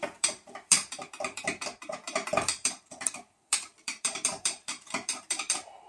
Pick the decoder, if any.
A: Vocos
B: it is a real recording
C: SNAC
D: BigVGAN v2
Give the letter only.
D